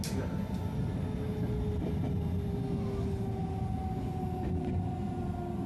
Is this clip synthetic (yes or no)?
no